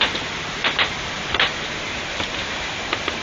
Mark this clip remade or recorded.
remade